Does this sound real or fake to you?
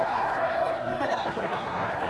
fake